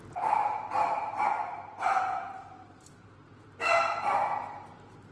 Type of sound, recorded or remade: recorded